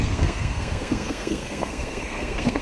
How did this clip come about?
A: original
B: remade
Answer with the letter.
B